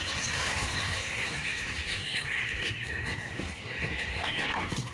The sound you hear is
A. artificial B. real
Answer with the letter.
A